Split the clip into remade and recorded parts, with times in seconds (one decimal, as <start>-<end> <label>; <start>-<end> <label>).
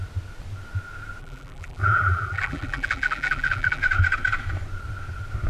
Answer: 0.0-1.2 recorded; 1.2-3.8 remade; 3.8-5.5 recorded